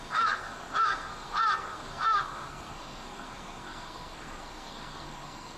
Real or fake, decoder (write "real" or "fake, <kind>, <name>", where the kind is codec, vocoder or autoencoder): fake, codec, SNAC